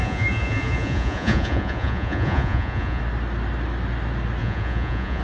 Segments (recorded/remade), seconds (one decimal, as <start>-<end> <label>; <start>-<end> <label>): 0.0-3.0 remade; 3.0-4.4 recorded; 4.4-5.2 remade